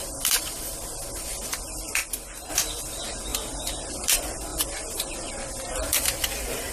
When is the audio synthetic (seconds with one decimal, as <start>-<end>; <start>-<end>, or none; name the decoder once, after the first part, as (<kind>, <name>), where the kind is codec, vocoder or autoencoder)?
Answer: 0.0-3.3 (vocoder, BigVGAN v2); 4.0-6.7